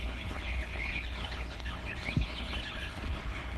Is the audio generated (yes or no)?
yes